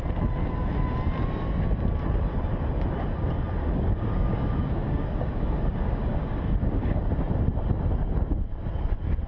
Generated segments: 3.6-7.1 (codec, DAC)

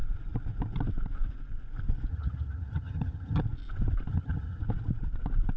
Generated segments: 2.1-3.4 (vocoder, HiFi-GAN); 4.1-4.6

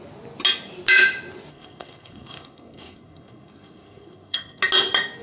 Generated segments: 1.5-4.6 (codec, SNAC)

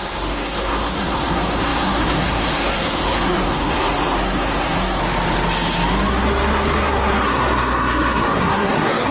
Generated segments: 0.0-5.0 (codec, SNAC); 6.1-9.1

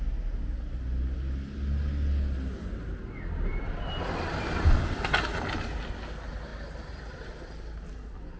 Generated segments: none

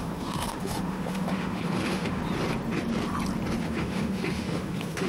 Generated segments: 0.0-2.2 (autoencoder, DAC-VAE); 3.6-5.1